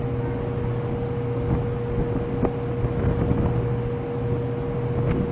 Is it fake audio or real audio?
real